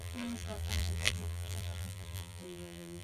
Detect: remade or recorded remade